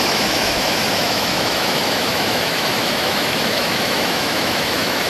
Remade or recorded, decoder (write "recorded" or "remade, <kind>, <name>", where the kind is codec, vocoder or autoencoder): remade, autoencoder, DAC-VAE